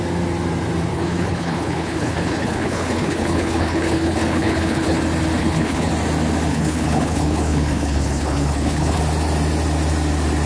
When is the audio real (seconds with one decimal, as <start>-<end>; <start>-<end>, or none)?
0.0-0.9; 5.0-5.4; 5.9-6.5; 9.0-10.5